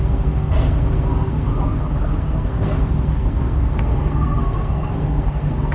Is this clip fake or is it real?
fake